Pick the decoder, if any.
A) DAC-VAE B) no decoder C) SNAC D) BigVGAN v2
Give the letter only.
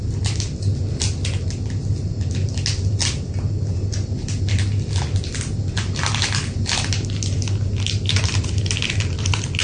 B